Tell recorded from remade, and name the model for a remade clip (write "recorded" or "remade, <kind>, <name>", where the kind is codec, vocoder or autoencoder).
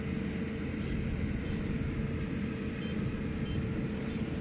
recorded